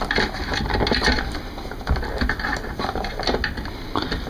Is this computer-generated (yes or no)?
no